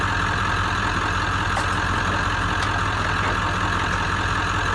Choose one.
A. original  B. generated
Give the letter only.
A